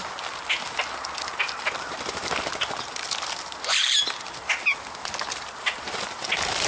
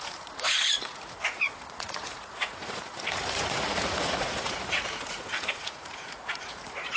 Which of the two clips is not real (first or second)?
second